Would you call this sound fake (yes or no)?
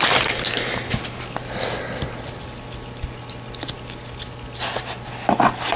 no